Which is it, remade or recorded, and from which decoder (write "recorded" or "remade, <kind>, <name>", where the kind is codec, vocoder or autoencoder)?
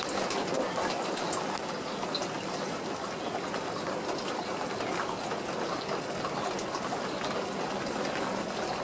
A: recorded